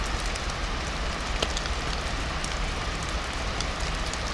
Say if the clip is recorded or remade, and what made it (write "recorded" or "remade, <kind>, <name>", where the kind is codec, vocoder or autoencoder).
recorded